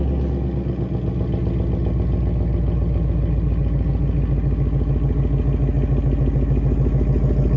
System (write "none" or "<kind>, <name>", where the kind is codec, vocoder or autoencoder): none